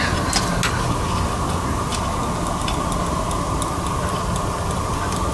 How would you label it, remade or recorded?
recorded